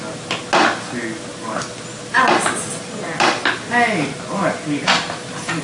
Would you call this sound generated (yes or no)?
no